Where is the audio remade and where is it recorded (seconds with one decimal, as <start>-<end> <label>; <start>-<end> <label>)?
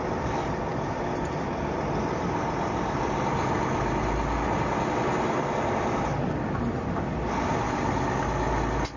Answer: 0.0-9.0 recorded